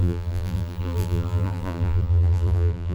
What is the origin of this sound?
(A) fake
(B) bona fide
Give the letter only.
A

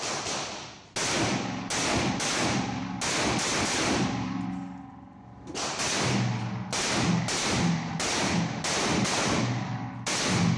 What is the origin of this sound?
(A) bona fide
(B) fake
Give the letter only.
A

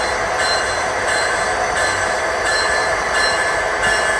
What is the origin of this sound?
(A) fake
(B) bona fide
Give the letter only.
A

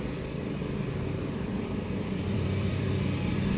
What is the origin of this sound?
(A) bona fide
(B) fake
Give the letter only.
B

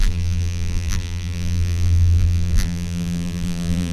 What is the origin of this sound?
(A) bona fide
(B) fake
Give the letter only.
B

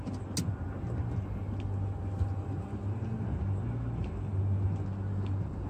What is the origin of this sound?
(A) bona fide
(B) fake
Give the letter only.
A